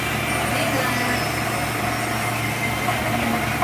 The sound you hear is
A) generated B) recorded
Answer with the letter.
B